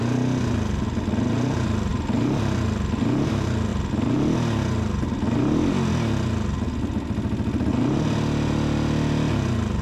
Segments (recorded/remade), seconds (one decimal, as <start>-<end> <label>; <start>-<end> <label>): 0.0-9.8 recorded